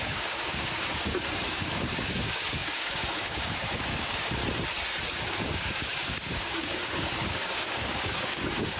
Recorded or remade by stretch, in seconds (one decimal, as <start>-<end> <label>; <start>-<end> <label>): 0.0-4.4 remade; 4.4-5.3 recorded; 5.3-8.8 remade